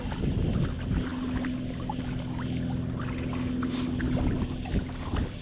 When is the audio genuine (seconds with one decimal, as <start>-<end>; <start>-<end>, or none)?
0.0-5.4